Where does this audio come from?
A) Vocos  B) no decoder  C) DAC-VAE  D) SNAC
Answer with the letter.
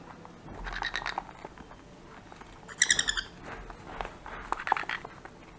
B